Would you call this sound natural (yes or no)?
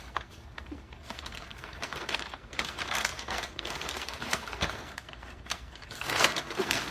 no